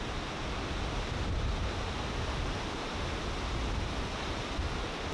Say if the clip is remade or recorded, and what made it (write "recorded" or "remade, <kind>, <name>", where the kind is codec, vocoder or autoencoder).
recorded